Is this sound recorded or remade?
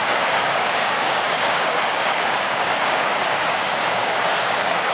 remade